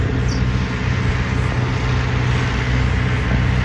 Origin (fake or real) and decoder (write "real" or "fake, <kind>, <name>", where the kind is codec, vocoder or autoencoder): real